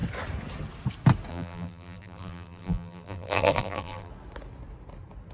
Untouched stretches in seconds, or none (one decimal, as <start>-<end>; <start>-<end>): 0.0-1.3; 4.1-5.3